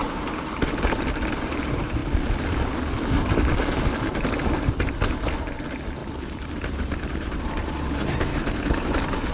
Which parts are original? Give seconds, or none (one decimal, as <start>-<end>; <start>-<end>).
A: 2.0-5.6